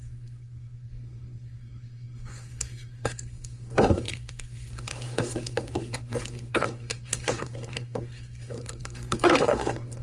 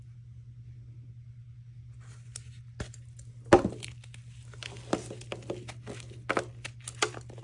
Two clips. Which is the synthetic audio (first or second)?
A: first